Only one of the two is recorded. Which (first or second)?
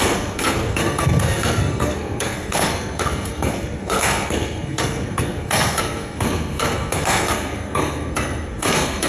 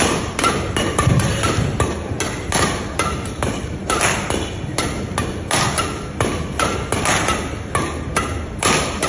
second